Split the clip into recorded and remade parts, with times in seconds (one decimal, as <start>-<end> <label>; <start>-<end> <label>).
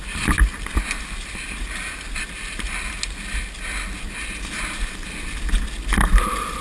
0.0-6.6 recorded